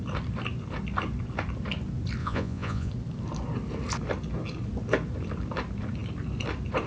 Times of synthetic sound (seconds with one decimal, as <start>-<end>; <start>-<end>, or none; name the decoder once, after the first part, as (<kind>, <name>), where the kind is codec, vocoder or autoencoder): 2.2-2.9 (vocoder, Vocos)

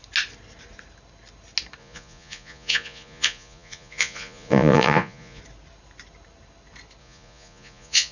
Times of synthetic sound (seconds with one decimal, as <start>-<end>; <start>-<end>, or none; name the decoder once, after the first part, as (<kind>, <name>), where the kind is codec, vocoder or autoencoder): 1.8-5.4 (vocoder, Vocos); 7.0-8.1

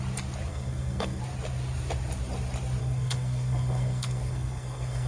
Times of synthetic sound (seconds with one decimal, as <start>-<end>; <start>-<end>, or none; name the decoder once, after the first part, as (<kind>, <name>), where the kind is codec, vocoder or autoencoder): 0.5-1.2 (codec, SNAC); 2.8-5.1